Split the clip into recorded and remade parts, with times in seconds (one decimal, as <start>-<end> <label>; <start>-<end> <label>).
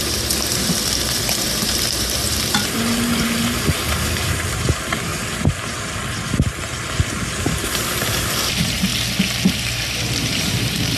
0.0-5.1 remade; 5.1-7.4 recorded; 7.4-8.9 remade; 8.9-9.5 recorded; 9.5-11.0 remade